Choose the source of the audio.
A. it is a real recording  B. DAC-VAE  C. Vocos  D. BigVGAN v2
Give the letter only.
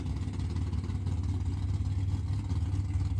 A